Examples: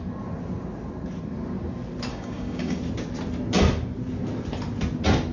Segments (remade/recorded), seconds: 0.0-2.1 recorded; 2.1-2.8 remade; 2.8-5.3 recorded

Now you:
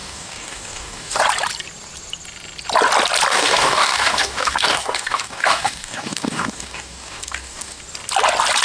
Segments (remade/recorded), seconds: 0.0-1.2 remade; 1.2-3.3 recorded; 3.3-7.8 remade; 7.8-8.6 recorded

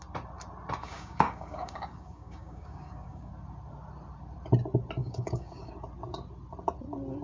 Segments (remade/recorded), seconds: 0.0-0.8 recorded; 0.8-3.3 remade; 3.3-5.0 recorded; 5.0-5.7 remade; 5.7-7.2 recorded

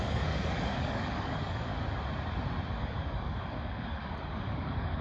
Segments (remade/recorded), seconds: 0.0-1.7 remade; 1.7-2.8 recorded; 2.8-5.0 remade

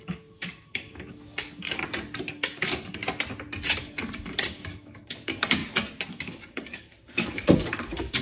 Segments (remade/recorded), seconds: 0.0-1.8 remade; 1.8-2.3 recorded; 2.3-3.0 remade; 3.0-3.8 recorded; 3.8-5.6 remade; 5.6-6.1 recorded; 6.1-8.2 remade

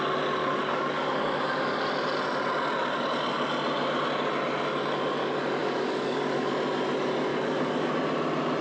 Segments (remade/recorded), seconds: 0.0-0.4 recorded; 0.4-1.8 remade; 1.8-5.6 recorded; 5.6-6.5 remade; 6.5-7.3 recorded; 7.3-7.9 remade; 7.9-8.6 recorded

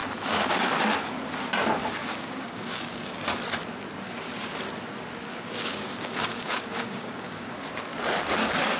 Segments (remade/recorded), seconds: 0.0-2.0 recorded; 2.0-3.2 remade; 3.2-5.2 recorded; 5.2-7.7 remade; 7.7-8.8 recorded